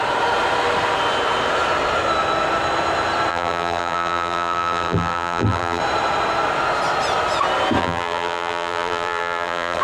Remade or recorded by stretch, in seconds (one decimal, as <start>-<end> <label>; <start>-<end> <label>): 0.0-3.3 recorded; 3.3-5.8 remade; 5.8-7.8 recorded; 7.8-9.8 remade